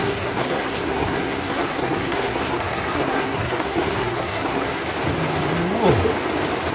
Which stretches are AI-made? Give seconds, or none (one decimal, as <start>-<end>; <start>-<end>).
0.0-4.8